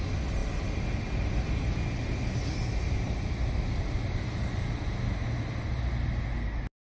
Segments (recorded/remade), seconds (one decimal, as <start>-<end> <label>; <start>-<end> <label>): 0.0-6.9 recorded